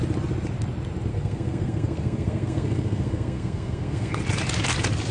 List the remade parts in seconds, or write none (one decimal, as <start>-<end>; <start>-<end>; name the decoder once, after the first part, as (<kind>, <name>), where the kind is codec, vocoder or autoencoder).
1.1-4.2 (codec, SNAC)